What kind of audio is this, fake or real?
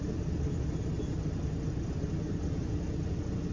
real